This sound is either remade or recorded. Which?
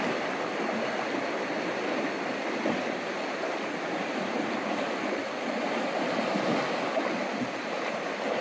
recorded